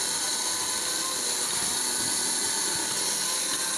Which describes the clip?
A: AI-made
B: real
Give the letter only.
B